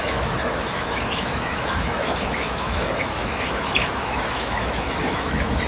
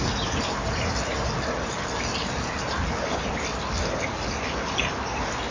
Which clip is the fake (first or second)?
first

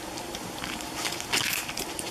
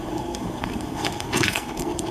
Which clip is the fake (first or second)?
second